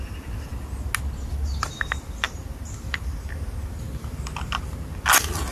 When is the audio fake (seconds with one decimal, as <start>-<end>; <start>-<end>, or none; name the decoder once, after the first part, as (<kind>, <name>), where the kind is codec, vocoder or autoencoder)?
none